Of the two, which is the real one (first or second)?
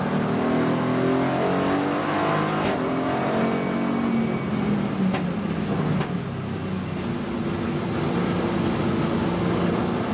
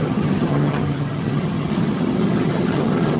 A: first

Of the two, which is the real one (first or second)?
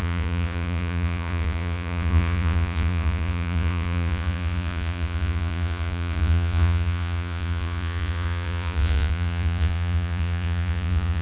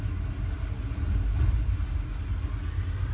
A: second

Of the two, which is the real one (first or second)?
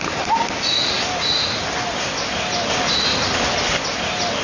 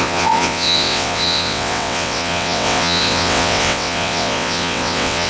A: first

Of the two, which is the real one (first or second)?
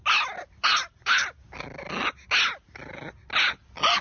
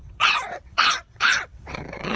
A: first